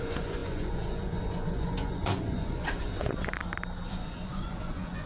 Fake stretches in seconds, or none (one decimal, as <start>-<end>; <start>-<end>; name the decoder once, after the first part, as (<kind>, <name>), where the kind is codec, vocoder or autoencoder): 0.0-3.4 (vocoder, Vocos); 3.9-5.1